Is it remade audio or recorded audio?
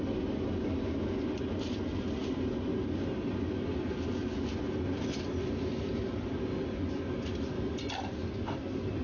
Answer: recorded